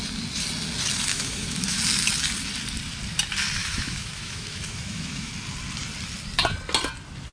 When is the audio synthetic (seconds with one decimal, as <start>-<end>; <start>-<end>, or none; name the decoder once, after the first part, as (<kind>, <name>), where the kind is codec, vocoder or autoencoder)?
1.1-1.8 (autoencoder, DAC-VAE); 3.6-5.3